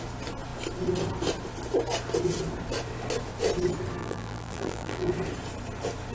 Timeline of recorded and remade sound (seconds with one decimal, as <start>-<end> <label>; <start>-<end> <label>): 0.0-4.0 recorded; 4.0-5.1 remade; 5.1-6.1 recorded

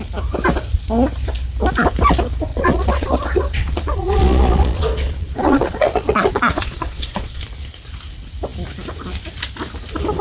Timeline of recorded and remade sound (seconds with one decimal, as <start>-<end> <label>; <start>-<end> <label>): 0.0-2.5 recorded; 2.5-7.4 remade; 7.4-10.2 recorded